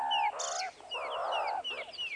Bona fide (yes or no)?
yes